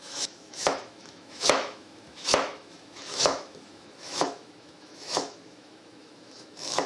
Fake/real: fake